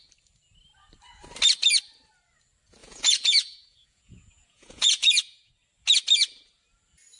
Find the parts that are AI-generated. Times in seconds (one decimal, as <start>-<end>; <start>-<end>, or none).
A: 2.8-5.5